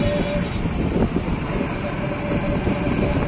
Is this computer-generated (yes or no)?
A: no